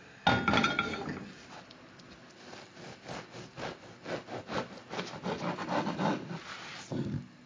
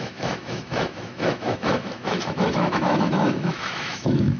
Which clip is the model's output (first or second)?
second